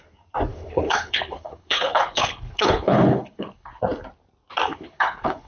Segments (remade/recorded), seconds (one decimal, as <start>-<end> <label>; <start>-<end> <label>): 0.0-0.5 recorded; 0.5-3.8 remade; 3.8-4.7 recorded; 4.7-5.5 remade